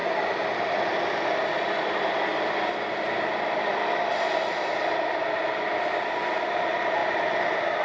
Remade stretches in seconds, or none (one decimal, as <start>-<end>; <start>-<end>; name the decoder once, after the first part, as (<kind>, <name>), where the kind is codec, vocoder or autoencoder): none